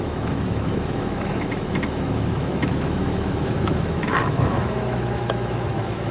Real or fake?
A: fake